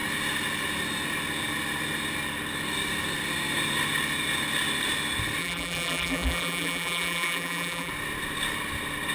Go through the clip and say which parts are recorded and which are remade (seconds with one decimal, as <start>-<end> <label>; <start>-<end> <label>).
0.0-5.4 recorded; 5.4-7.9 remade; 7.9-9.1 recorded